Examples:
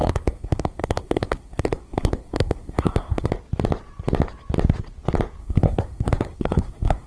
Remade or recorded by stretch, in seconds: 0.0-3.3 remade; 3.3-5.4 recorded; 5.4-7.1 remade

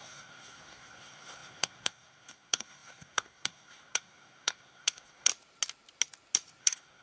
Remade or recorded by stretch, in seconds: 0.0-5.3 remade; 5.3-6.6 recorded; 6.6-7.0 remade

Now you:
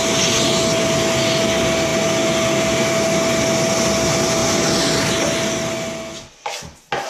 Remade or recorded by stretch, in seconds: 0.0-7.1 recorded

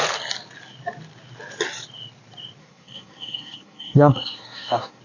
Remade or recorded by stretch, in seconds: 0.0-2.6 recorded; 2.6-5.0 remade

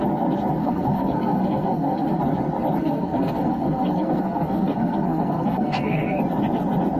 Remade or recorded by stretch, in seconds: 0.0-0.6 recorded; 0.6-2.2 remade; 2.2-2.8 recorded; 2.8-6.2 remade; 6.2-7.0 recorded

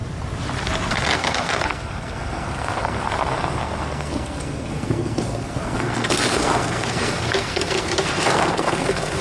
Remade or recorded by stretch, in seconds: 0.0-0.9 recorded; 0.9-9.2 remade